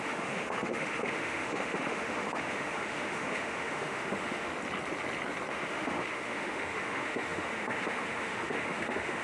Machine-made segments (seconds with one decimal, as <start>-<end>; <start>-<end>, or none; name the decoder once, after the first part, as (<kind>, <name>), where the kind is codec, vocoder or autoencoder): 0.0-4.5 (autoencoder, DAC-VAE); 5.5-9.2